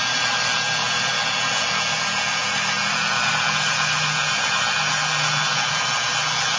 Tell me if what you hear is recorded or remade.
recorded